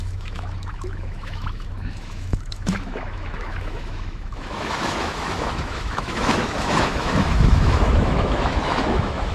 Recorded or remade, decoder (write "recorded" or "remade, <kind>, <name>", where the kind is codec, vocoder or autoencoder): remade, autoencoder, DAC-VAE